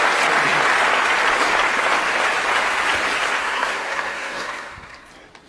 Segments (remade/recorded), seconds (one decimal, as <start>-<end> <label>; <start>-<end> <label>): 0.0-3.4 recorded; 3.4-5.1 remade; 5.1-5.5 recorded